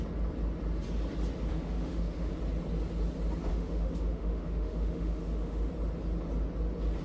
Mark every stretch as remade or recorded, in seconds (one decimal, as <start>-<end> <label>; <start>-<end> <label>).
0.0-1.5 recorded; 1.5-2.3 remade; 2.3-3.5 recorded; 3.5-5.7 remade; 5.7-7.0 recorded